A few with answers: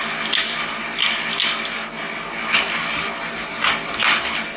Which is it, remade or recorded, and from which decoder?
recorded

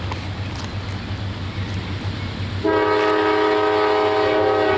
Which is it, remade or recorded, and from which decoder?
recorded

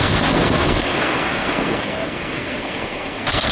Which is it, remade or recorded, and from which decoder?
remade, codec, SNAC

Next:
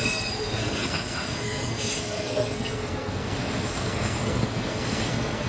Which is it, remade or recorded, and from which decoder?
remade, codec, SNAC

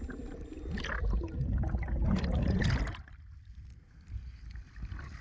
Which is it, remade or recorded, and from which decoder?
recorded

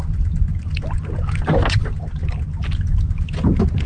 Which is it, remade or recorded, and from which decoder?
recorded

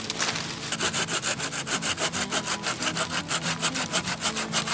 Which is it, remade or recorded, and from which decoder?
recorded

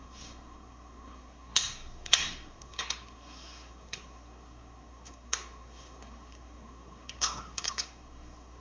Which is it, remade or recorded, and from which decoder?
remade, codec, SNAC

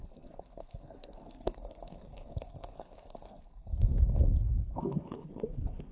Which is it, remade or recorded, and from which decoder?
remade, codec, SNAC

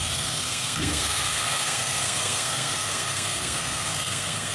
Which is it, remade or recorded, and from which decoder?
remade, codec, SNAC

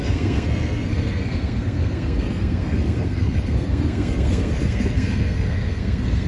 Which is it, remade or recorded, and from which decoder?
remade, codec, SNAC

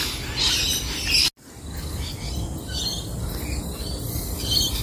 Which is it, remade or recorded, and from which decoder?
recorded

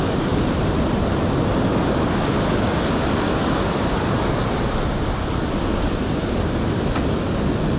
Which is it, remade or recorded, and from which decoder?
recorded